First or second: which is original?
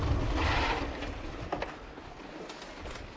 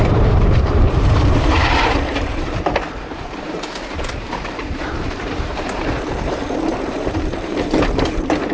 first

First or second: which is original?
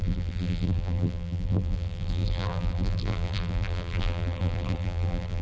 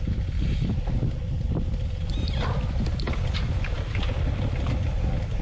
second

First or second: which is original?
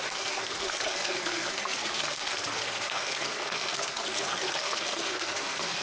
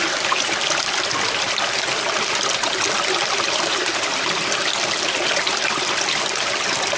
second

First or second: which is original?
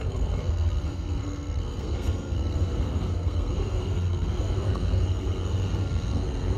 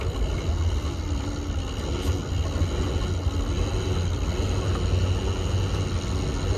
second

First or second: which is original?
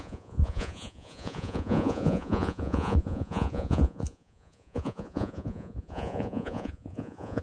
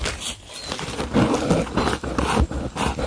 second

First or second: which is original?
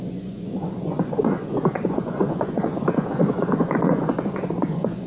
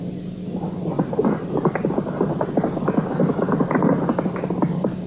second